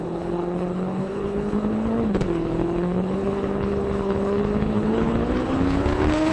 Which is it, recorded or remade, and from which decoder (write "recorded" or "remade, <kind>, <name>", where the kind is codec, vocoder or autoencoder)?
remade, codec, HILCodec